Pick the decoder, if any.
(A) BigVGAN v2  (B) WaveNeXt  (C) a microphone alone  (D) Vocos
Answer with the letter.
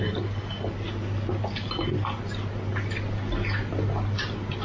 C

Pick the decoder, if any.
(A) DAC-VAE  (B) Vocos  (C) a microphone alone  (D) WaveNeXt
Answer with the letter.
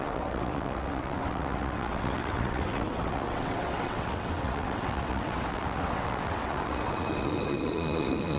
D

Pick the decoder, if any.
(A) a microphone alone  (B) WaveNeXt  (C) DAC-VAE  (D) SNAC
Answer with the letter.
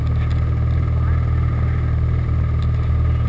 A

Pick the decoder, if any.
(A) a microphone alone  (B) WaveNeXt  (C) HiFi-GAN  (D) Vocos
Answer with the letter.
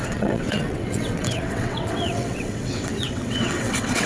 B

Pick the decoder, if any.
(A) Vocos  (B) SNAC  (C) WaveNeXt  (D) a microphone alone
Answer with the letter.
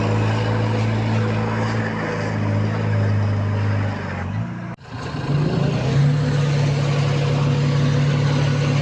D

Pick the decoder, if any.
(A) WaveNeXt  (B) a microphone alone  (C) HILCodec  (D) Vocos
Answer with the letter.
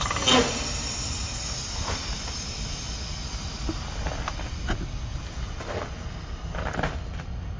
B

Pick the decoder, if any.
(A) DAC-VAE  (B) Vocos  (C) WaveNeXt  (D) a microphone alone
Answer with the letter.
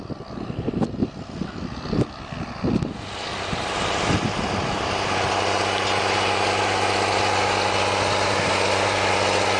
D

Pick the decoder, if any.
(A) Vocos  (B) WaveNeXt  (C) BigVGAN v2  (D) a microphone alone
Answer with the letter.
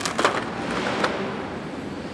D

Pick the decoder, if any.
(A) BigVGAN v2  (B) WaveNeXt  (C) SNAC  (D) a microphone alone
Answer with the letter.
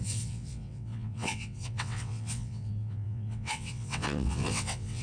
B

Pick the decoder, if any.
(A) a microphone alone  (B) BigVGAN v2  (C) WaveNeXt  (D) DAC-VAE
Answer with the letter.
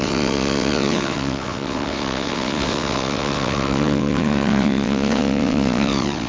C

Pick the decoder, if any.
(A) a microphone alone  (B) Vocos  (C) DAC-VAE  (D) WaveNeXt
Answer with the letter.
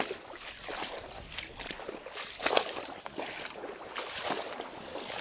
A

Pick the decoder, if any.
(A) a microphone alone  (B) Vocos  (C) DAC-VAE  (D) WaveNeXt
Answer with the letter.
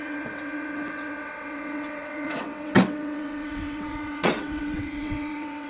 D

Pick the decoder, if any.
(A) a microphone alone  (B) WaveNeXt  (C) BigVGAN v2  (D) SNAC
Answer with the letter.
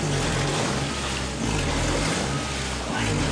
A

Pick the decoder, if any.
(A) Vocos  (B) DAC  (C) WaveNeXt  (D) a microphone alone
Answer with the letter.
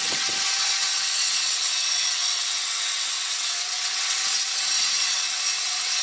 C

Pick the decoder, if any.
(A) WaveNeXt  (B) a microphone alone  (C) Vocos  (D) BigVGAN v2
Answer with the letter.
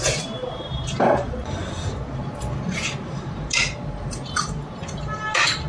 B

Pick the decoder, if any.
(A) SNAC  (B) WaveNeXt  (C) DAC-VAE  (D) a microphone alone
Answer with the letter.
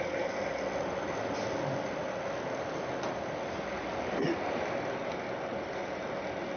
D